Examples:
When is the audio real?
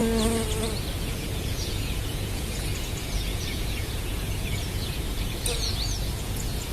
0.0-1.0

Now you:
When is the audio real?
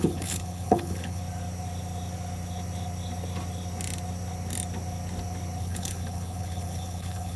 1.2-5.6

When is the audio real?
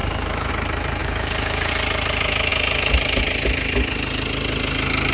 0.5-1.0; 1.7-5.1